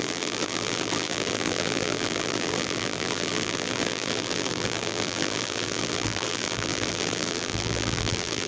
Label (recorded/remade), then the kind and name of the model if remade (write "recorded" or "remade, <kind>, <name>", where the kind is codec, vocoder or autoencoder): remade, vocoder, BigVGAN v2